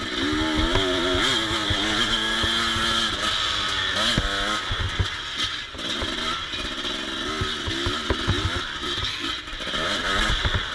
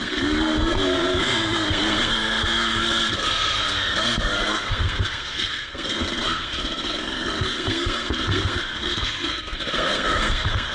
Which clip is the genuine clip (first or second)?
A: first